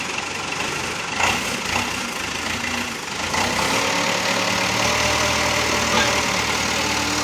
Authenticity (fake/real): real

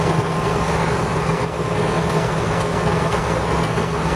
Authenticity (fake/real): fake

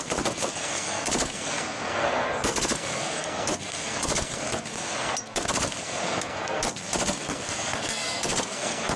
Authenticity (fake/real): fake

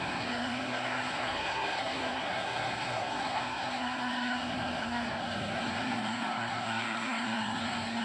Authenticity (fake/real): fake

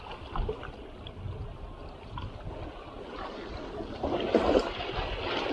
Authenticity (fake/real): real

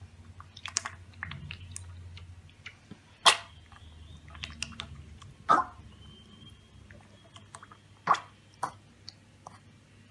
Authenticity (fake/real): real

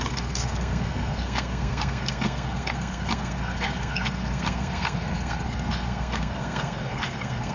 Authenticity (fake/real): fake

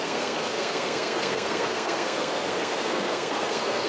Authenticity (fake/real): fake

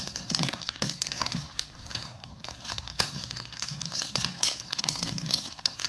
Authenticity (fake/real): fake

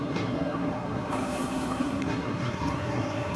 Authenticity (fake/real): fake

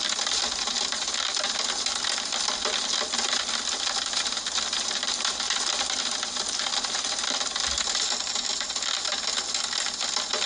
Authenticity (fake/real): real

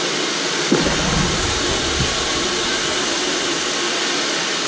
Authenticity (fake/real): real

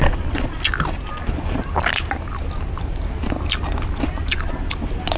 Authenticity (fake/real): real